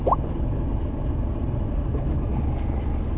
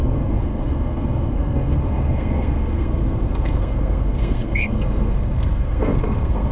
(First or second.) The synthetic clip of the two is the second